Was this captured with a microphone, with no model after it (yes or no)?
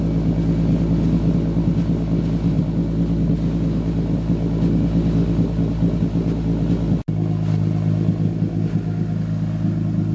yes